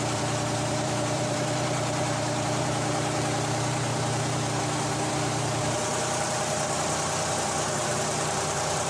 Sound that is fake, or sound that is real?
fake